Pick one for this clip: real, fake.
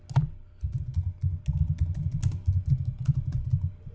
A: real